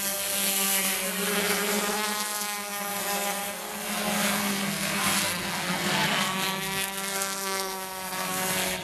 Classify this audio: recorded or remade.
remade